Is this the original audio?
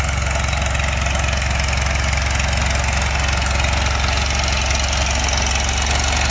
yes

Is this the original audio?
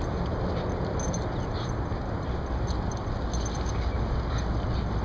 yes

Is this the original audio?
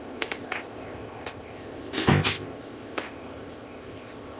no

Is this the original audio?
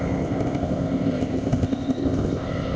no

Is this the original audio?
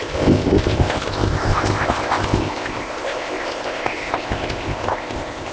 no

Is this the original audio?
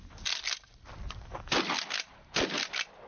yes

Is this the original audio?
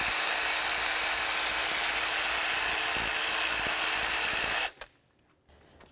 yes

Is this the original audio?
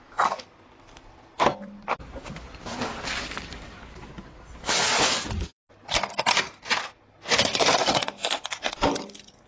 yes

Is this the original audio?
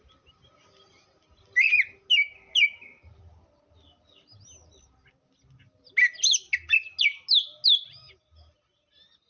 yes